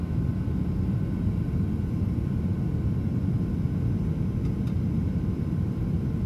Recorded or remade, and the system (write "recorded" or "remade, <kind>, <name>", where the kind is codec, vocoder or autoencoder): recorded